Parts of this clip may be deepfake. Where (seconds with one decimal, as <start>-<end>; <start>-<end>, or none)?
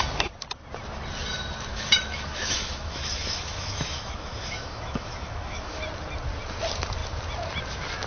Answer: 1.7-5.8